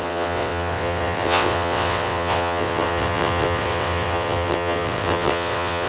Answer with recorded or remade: remade